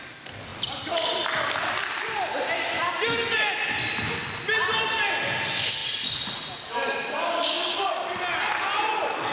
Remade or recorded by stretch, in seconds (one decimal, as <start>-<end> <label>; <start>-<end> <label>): 0.0-7.2 recorded; 7.2-7.9 remade; 7.9-9.3 recorded